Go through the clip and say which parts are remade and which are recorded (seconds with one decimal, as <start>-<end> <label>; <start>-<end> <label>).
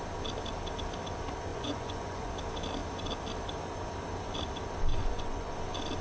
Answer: 0.0-1.5 recorded; 1.5-2.3 remade; 2.3-4.9 recorded; 4.9-5.5 remade; 5.5-6.0 recorded